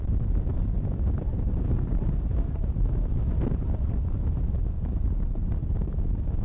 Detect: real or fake fake